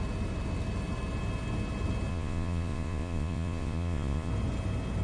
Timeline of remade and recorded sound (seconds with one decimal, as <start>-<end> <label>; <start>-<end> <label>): 0.0-2.1 recorded; 2.1-4.3 remade; 4.3-5.0 recorded